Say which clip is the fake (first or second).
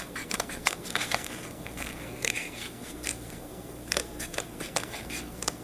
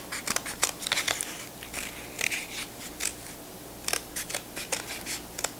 first